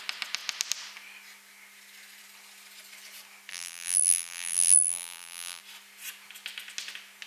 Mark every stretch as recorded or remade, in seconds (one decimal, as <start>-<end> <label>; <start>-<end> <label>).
0.0-3.5 recorded; 3.5-5.6 remade; 5.6-7.3 recorded

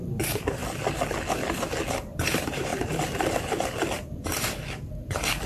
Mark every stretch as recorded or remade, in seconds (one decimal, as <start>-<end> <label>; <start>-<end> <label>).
0.0-0.6 remade; 0.6-2.1 recorded; 2.1-2.7 remade; 2.7-5.5 recorded

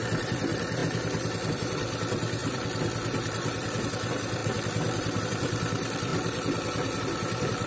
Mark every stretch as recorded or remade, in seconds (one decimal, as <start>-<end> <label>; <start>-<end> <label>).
0.0-0.8 remade; 0.8-1.5 recorded; 1.5-6.1 remade; 6.1-7.0 recorded; 7.0-7.7 remade

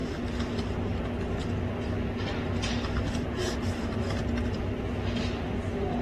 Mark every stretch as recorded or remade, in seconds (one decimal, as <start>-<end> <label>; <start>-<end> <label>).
0.0-6.0 recorded

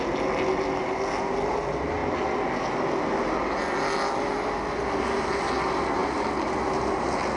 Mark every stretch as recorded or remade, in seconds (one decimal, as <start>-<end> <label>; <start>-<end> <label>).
0.0-7.4 recorded